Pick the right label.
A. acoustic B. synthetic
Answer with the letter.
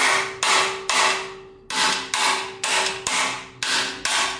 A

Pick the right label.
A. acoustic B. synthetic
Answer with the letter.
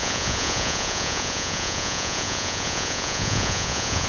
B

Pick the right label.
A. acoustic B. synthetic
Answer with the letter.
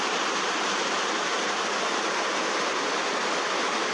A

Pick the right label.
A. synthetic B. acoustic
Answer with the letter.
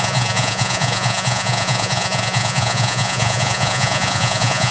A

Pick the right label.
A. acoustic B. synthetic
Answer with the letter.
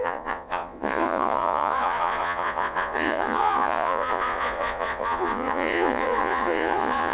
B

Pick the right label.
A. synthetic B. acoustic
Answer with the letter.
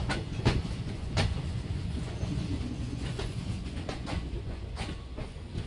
A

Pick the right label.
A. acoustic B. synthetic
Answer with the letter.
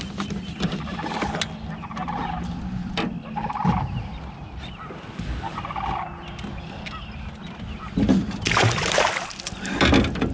A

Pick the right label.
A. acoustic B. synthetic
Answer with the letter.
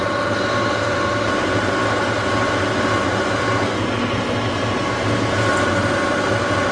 A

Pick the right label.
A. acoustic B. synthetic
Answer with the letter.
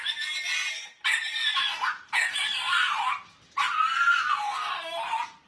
A